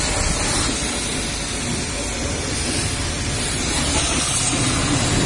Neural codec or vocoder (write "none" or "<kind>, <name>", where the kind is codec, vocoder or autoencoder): none